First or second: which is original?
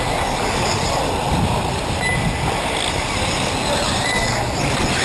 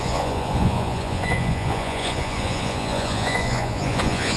first